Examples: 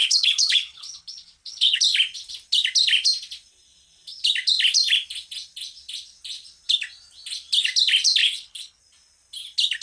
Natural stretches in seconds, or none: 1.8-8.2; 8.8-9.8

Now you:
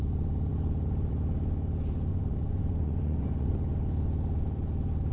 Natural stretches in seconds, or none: 0.0-2.1; 3.5-5.1

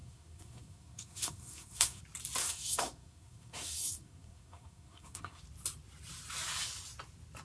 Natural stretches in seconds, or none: 2.0-2.4; 5.4-7.4

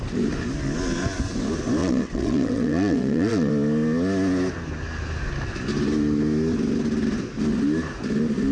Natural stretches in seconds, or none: 0.0-1.8; 3.5-8.5

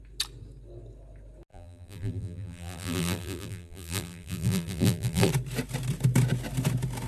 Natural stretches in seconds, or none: 0.0-1.5; 5.3-7.1

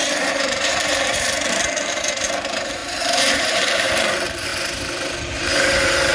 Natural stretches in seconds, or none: 4.5-5.3